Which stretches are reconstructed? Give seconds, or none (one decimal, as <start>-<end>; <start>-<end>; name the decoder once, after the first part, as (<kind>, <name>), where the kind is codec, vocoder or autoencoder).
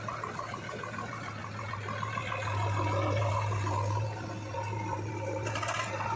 none